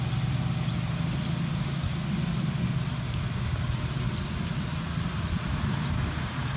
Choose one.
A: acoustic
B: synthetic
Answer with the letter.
A